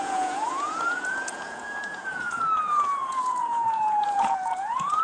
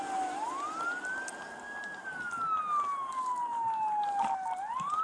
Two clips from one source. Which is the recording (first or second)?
second